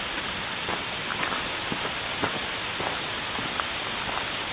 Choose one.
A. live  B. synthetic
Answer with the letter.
A